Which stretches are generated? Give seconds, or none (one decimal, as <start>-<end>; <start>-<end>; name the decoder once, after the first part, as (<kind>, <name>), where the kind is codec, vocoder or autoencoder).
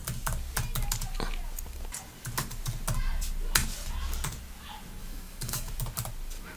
5.0-5.7 (codec, DAC)